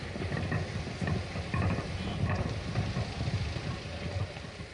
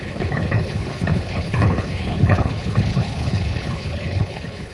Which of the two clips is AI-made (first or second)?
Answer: second